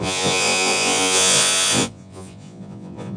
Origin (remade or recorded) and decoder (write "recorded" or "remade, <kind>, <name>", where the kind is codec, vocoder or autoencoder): remade, vocoder, Vocos